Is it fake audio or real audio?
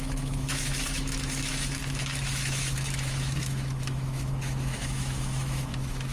fake